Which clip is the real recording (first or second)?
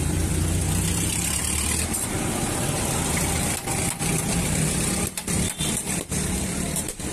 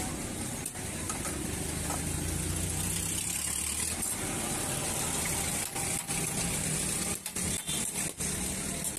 second